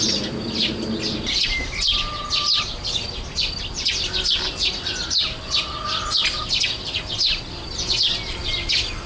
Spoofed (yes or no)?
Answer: no